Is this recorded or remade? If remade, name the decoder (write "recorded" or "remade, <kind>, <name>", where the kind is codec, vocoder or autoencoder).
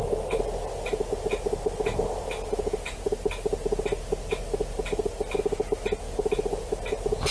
recorded